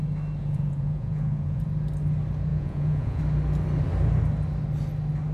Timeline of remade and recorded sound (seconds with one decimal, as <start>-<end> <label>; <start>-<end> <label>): 0.0-0.4 recorded; 0.4-1.6 remade; 1.6-2.5 recorded; 2.5-3.2 remade; 3.2-5.3 recorded